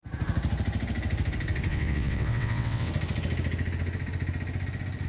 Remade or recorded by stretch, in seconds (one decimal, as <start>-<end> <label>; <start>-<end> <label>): 0.0-1.7 recorded; 1.7-2.9 remade; 2.9-5.1 recorded